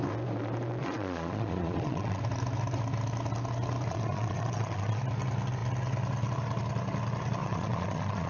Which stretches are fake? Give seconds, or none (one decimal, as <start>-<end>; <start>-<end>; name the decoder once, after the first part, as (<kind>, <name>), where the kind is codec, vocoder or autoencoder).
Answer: 0.8-2.2 (vocoder, Vocos); 3.9-5.0; 7.4-8.3